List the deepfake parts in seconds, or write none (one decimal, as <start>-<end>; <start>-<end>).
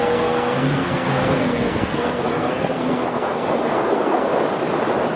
0.0-4.3